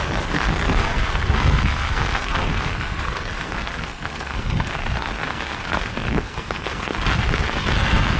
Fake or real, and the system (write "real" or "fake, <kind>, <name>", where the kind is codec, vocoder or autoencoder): fake, codec, SNAC